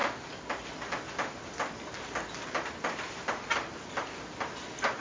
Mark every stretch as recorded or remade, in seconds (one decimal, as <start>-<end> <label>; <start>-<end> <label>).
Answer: 0.0-5.0 recorded